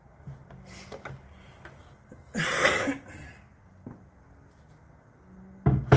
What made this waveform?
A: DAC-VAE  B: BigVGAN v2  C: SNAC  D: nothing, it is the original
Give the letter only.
D